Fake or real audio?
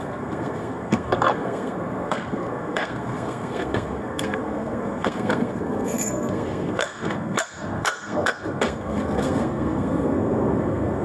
fake